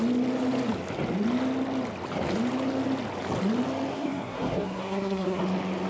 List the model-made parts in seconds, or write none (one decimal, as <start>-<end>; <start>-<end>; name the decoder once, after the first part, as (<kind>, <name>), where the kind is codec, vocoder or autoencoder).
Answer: 3.9-5.4 (codec, SNAC)